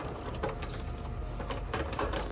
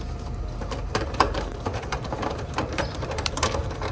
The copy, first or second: second